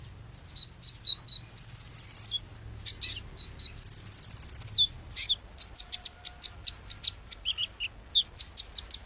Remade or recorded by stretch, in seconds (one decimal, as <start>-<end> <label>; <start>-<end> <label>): 0.0-9.1 recorded